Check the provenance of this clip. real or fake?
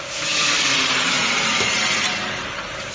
real